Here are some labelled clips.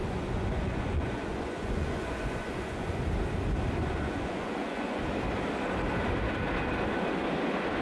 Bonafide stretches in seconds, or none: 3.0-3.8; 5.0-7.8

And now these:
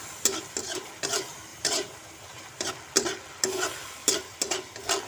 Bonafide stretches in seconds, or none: 0.0-1.5; 2.7-5.1

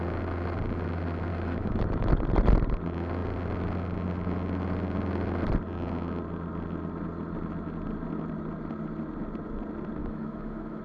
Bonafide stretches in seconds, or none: 0.0-1.3; 2.1-10.0

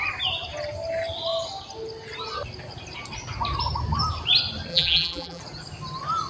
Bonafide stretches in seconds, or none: 0.0-4.7; 5.4-6.3

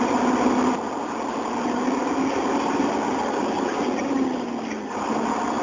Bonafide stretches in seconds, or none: 0.0-5.6

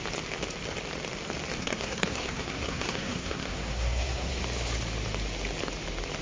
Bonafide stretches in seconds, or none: 0.0-1.6; 4.4-6.2

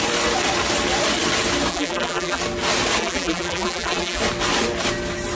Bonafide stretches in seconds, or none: 0.0-1.7; 2.4-3.0; 4.2-5.4

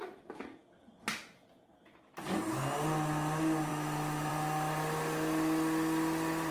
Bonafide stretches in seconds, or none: 0.0-3.7; 4.3-6.5